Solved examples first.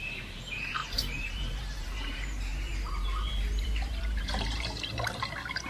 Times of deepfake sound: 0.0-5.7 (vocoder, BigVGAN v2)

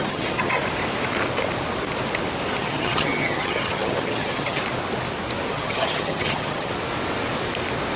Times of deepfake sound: 0.0-0.6 (vocoder, HiFi-GAN); 2.6-4.6; 5.5-6.7

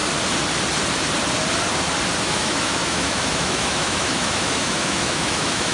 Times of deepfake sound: 2.2-5.7 (autoencoder, DAC-VAE)

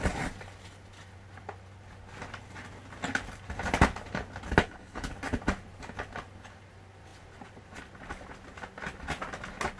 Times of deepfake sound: 4.6-5.1 (codec, HILCodec)

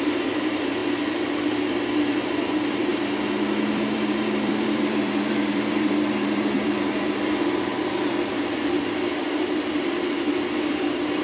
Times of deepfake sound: 0.0-0.8 (vocoder, BigVGAN v2); 2.3-2.9; 3.7-7.7; 8.3-11.2

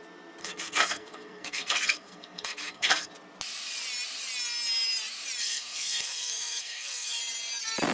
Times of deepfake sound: 0.4-3.1 (codec, SNAC); 5.4-7.2

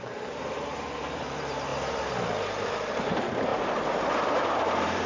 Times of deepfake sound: 0.0-1.7 (vocoder, BigVGAN v2); 2.9-5.1